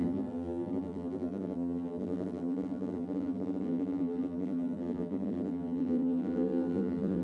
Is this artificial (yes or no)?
yes